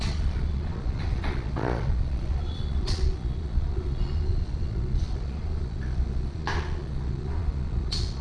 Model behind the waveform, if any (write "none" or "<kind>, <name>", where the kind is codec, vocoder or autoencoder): vocoder, Vocos